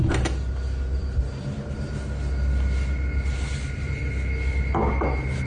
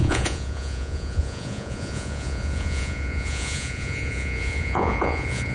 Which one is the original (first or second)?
first